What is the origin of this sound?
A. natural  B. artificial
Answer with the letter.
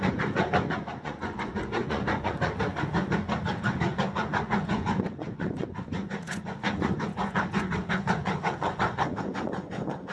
B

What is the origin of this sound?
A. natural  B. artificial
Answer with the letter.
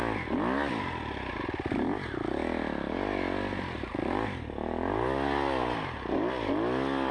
A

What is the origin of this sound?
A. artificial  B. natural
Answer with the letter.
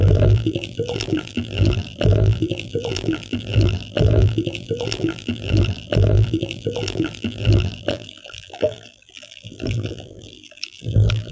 A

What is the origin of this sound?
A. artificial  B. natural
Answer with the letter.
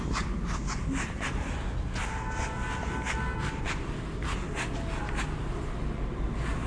B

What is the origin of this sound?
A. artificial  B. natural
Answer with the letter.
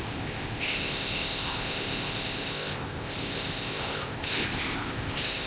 A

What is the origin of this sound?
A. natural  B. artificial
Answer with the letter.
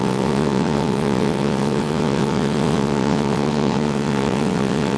B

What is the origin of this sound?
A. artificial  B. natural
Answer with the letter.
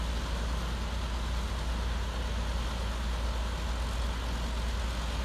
B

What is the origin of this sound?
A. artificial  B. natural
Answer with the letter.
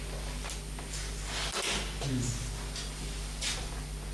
B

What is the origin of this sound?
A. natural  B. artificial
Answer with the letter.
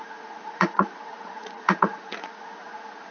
B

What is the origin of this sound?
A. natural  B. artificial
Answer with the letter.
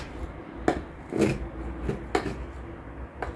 A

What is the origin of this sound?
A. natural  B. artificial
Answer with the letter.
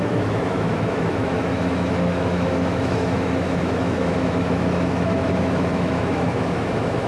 B